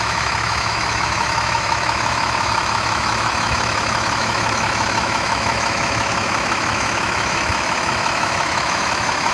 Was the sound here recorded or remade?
remade